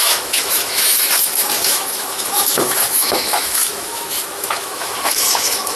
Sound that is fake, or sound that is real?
fake